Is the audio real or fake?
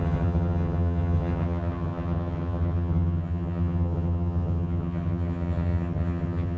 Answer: fake